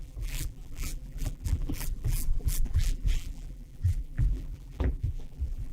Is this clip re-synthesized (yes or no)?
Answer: yes